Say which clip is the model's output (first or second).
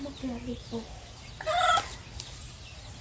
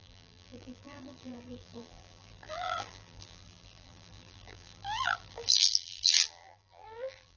second